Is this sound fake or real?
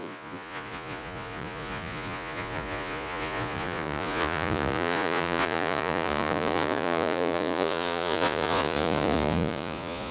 fake